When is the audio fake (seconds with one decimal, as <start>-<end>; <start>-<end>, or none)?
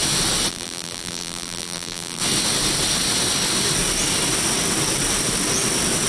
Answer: 0.5-2.2